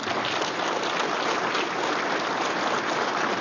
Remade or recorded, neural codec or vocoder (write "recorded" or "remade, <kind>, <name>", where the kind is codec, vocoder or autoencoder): recorded